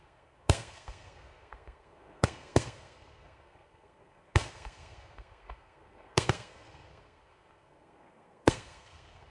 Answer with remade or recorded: remade